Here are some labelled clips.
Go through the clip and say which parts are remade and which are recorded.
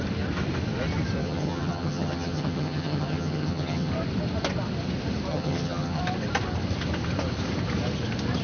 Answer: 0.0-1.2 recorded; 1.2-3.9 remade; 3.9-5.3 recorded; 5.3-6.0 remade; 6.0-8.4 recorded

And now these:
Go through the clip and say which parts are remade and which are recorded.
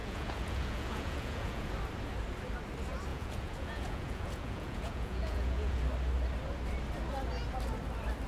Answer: 0.0-1.7 remade; 1.7-3.1 recorded; 3.1-5.8 remade; 5.8-8.3 recorded